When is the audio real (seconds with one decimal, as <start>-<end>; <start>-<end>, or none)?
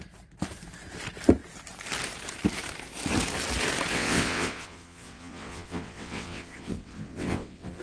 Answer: 0.0-3.9